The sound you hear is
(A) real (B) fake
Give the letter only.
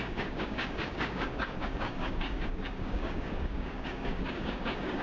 B